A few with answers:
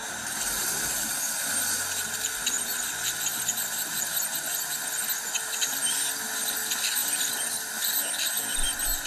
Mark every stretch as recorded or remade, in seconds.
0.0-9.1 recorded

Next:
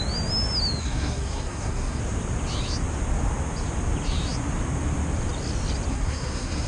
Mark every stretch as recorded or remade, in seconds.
0.0-0.8 recorded; 0.8-2.0 remade; 2.0-5.9 recorded; 5.9-6.7 remade

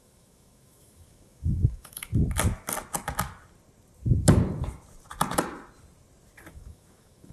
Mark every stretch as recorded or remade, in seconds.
0.0-2.1 remade; 2.1-6.5 recorded; 6.5-7.3 remade